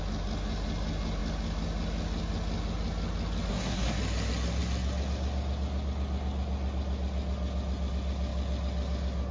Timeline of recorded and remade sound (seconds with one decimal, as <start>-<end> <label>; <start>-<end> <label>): 0.0-3.5 recorded; 3.5-4.0 remade; 4.0-9.3 recorded